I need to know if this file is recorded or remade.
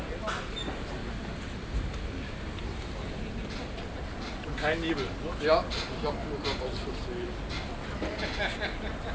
recorded